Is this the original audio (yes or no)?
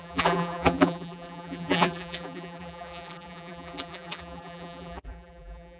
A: no